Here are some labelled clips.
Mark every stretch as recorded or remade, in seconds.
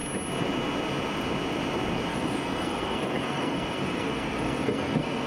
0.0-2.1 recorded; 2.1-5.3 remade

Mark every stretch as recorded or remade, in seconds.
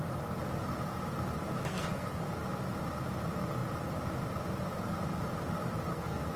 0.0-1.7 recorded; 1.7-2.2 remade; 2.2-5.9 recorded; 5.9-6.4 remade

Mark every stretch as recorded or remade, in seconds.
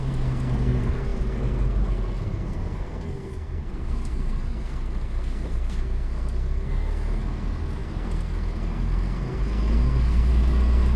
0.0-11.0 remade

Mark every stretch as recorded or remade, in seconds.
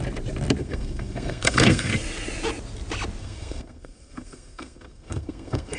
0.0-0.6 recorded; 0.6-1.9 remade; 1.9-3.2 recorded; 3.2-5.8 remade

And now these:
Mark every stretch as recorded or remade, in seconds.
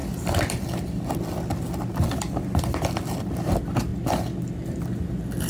0.0-5.5 recorded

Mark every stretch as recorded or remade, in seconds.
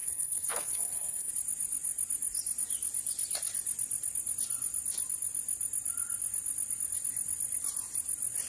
0.0-1.3 remade; 1.3-8.5 recorded